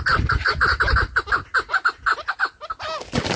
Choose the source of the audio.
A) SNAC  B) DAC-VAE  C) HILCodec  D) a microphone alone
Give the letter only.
D